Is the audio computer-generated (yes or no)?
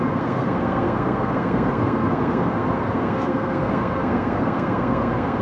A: yes